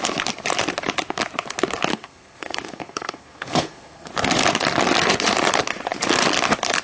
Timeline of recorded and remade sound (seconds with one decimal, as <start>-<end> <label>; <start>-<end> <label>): 0.0-1.9 recorded; 1.9-4.1 remade; 4.1-6.8 recorded